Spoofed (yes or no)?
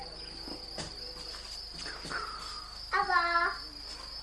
no